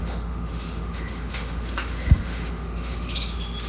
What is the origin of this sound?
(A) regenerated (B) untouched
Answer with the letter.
A